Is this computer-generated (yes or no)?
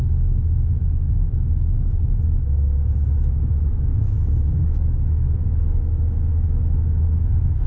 yes